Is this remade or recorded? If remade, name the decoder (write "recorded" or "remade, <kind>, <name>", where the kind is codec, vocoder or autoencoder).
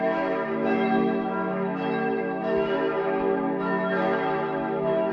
remade, autoencoder, DAC-VAE